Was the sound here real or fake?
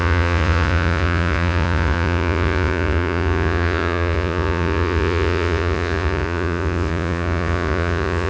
fake